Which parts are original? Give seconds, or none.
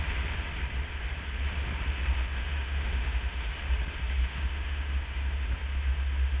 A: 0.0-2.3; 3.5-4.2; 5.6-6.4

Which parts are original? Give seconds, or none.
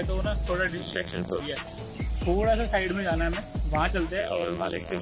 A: 0.0-0.8; 1.4-4.2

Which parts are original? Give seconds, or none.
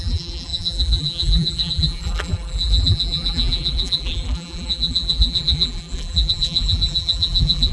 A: none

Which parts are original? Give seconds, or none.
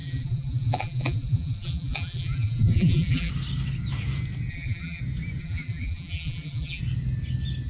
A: 3.3-4.5; 5.0-5.4; 6.8-7.7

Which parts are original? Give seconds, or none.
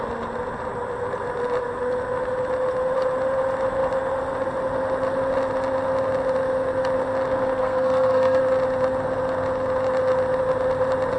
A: 0.0-7.6; 8.4-11.2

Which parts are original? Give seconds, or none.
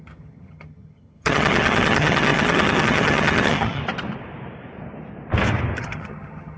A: 3.8-5.8